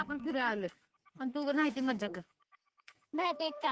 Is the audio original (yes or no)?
no